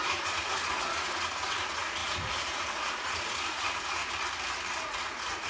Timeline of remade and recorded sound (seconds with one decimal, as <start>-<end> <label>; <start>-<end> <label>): 0.0-4.0 remade; 4.0-4.7 recorded; 4.7-5.5 remade